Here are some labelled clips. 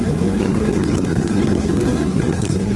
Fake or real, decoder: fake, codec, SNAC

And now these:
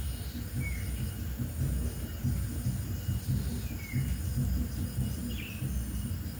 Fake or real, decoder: real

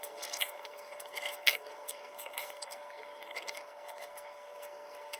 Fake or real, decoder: fake, codec, SNAC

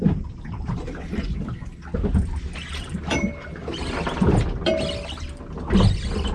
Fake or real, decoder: real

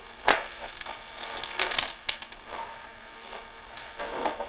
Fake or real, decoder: fake, codec, SNAC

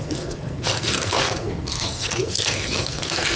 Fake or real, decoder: fake, codec, SNAC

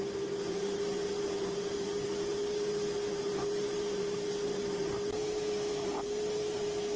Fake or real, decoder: real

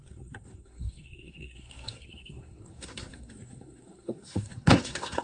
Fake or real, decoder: fake, codec, SNAC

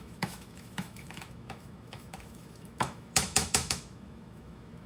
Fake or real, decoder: fake, autoencoder, DAC-VAE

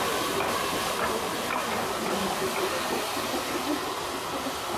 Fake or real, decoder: real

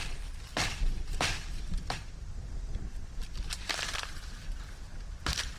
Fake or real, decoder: fake, vocoder, BigVGAN v2